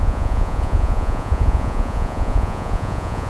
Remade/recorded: remade